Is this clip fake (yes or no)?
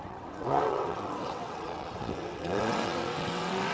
yes